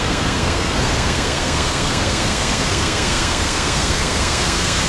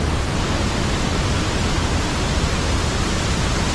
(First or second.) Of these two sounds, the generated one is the first